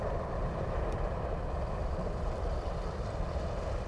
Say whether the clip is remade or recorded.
recorded